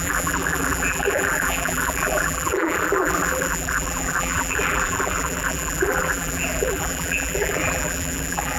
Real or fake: fake